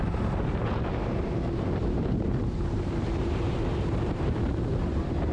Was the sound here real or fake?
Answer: fake